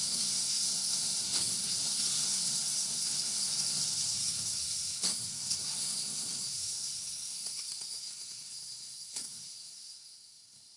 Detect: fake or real fake